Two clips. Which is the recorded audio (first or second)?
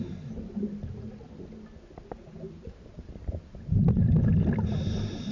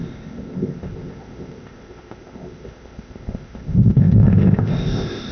first